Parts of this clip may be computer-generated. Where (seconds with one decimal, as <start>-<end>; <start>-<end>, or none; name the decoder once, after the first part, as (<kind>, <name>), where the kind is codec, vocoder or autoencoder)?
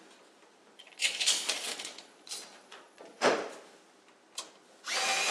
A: 0.8-3.2 (vocoder, Vocos)